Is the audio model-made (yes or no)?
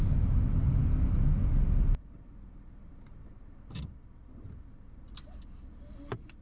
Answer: no